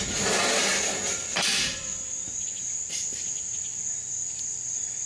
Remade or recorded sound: recorded